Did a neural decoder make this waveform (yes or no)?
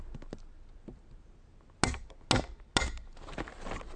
no